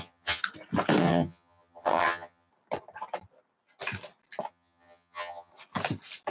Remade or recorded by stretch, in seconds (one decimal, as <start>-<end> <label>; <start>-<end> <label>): 0.0-0.4 remade; 0.4-1.0 recorded; 1.0-2.5 remade; 2.5-4.5 recorded; 4.5-5.5 remade; 5.5-6.3 recorded